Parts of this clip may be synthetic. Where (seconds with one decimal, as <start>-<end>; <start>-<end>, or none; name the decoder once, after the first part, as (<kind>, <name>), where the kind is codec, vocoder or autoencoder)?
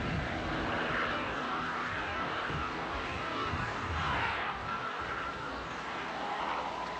1.1-5.0 (codec, DAC); 5.4-6.4